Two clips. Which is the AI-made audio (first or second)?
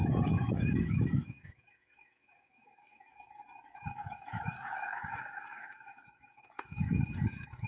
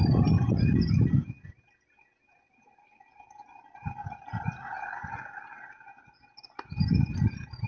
first